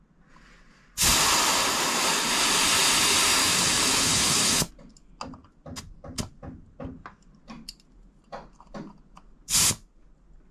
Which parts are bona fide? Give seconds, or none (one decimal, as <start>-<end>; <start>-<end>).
0.0-3.4; 4.7-10.5